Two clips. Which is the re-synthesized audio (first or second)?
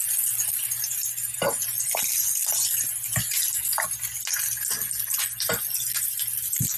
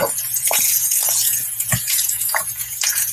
second